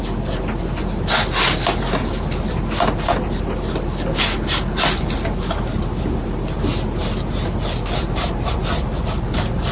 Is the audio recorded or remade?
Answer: recorded